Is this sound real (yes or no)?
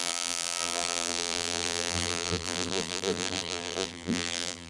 no